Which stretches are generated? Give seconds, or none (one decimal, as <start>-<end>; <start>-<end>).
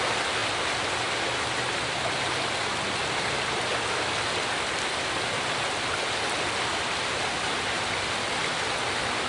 none